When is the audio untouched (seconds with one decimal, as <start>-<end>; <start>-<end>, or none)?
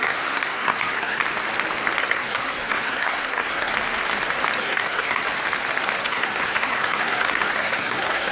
1.2-2.0; 3.7-4.6; 5.2-6.0